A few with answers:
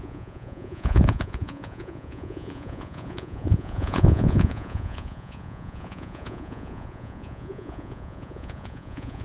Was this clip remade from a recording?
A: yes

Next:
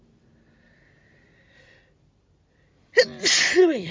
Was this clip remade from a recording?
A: no